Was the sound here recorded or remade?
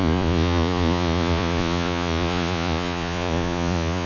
remade